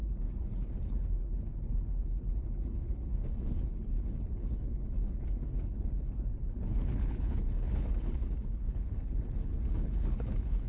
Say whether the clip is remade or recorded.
remade